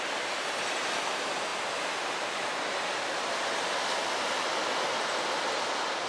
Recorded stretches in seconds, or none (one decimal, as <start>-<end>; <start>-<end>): 0.0-6.1